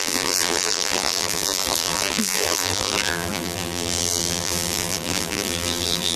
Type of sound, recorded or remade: remade